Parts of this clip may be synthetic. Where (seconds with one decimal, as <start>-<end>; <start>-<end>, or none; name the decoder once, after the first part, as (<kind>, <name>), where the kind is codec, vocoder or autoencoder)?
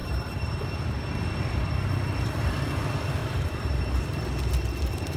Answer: 0.0-1.0 (vocoder, BigVGAN v2); 3.2-3.8